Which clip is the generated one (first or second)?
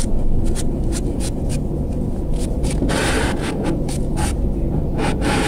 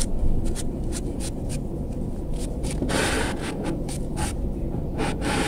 second